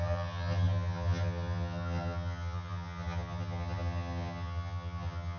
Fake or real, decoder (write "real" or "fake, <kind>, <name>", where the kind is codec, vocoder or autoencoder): fake, vocoder, HiFi-GAN